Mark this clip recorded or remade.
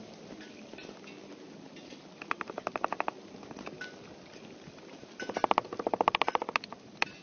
recorded